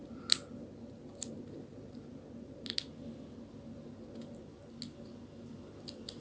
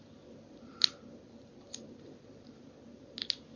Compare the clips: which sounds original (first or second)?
first